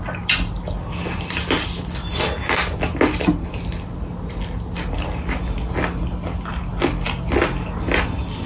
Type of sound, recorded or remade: recorded